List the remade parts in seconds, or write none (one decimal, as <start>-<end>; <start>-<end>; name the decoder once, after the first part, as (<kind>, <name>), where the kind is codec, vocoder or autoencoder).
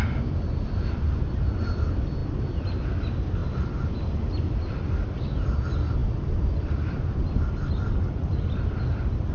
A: none